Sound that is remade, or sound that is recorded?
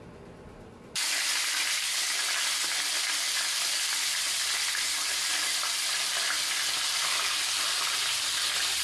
recorded